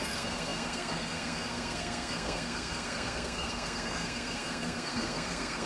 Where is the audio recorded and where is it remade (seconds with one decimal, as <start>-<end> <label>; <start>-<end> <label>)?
0.0-5.7 remade